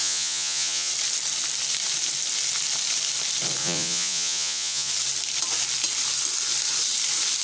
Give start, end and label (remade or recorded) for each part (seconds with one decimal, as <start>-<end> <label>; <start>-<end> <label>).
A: 0.0-0.9 remade; 0.9-3.6 recorded; 3.6-4.9 remade; 4.9-7.4 recorded